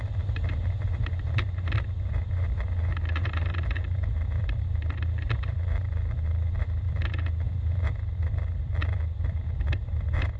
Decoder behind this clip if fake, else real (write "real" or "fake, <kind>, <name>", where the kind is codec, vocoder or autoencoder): fake, vocoder, BigVGAN v2